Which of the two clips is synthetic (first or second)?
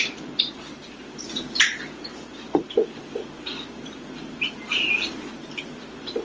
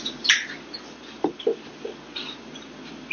first